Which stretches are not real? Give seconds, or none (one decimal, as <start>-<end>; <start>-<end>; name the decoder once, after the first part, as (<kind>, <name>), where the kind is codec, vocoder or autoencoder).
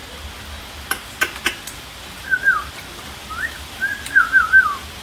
none